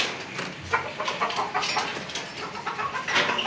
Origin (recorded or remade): recorded